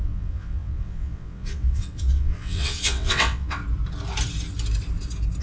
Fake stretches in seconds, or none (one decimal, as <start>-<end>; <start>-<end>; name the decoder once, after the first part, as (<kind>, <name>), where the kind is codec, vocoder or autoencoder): 0.0-3.6 (vocoder, WaveNeXt)